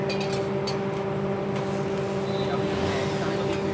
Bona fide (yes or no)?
yes